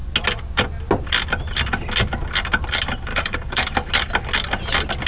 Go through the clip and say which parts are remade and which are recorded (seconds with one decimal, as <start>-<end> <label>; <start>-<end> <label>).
0.0-3.1 recorded; 3.1-3.9 remade; 3.9-5.1 recorded